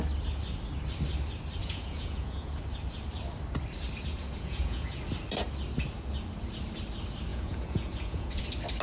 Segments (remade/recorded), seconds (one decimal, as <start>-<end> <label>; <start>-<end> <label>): 0.0-1.6 recorded; 1.6-2.6 remade; 2.6-4.1 recorded; 4.1-5.0 remade; 5.0-7.3 recorded; 7.3-8.4 remade; 8.4-8.8 recorded